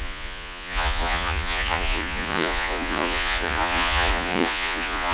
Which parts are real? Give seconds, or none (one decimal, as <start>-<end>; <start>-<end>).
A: none